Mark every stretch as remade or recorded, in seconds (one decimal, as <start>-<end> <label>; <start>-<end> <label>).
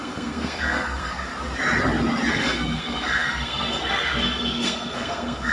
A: 0.0-1.3 remade; 1.3-2.3 recorded; 2.3-5.5 remade